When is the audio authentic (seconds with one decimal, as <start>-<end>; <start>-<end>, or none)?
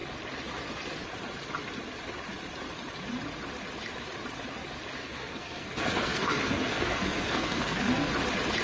0.0-5.0; 8.1-8.6